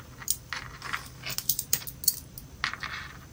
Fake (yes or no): no